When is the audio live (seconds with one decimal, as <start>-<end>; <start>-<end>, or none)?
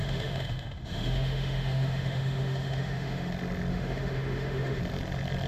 3.3-3.7; 4.8-5.5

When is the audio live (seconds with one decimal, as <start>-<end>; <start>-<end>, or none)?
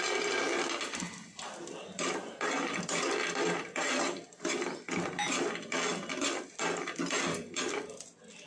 0.0-8.5